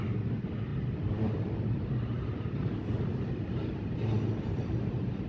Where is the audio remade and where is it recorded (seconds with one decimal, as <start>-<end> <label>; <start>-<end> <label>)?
0.0-5.3 recorded